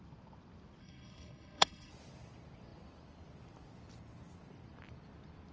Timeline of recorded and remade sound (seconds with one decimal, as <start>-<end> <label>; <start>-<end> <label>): 0.0-0.8 recorded; 0.8-1.9 remade; 1.9-5.5 recorded